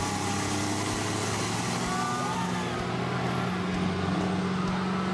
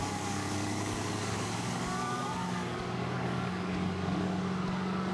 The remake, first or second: second